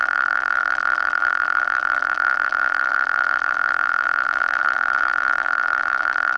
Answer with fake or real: fake